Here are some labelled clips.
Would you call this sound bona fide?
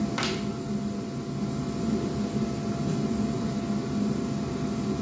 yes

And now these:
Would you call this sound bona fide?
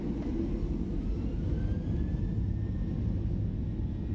yes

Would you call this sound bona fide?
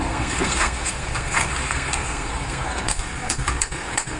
no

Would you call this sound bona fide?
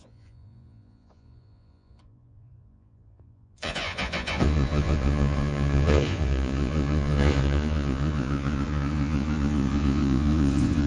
no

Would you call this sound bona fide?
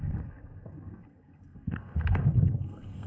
no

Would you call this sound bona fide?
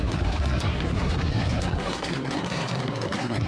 no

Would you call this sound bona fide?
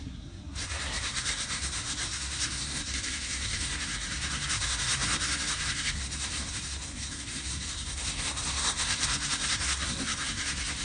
no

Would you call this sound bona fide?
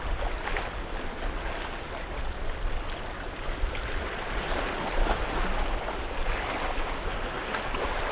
yes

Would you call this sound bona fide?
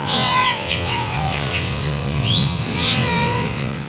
no